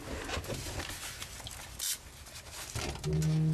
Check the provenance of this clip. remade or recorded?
recorded